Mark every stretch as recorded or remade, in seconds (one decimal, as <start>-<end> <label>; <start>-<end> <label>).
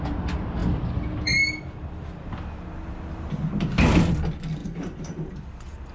0.0-4.6 recorded; 4.6-5.9 remade